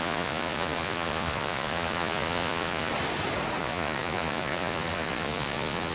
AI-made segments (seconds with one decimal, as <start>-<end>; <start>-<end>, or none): 0.0-2.9; 3.6-5.9